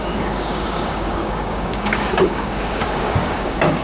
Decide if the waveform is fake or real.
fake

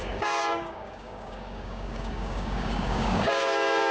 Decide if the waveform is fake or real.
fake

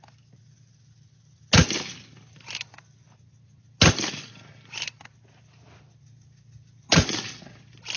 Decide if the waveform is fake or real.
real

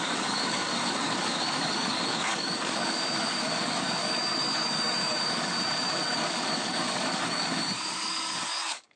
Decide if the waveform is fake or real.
fake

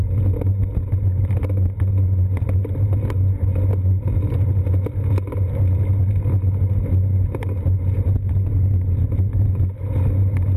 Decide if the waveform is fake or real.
real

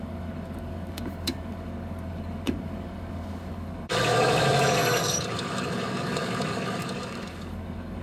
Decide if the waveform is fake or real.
fake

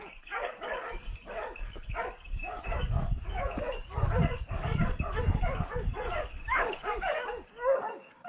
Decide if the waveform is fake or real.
fake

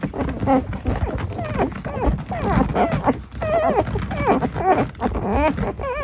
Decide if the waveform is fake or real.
real